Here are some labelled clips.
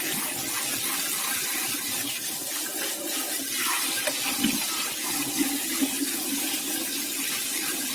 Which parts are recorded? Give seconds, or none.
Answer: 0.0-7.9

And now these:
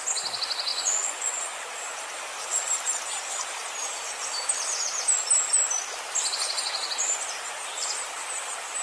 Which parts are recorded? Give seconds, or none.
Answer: 0.0-0.7; 1.7-8.8

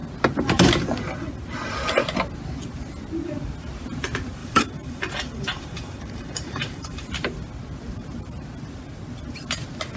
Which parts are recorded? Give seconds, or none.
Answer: 0.0-4.4; 7.1-10.0

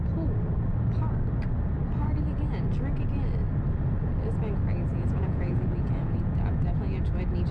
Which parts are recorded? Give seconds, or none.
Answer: 0.0-4.9; 7.0-7.5

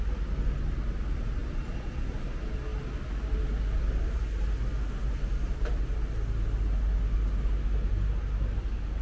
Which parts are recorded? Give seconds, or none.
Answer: 0.0-9.0